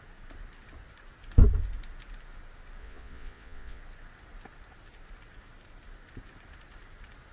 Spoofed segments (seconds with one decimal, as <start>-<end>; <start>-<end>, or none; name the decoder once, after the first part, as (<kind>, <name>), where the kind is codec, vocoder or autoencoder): 2.8-3.8 (vocoder, Vocos)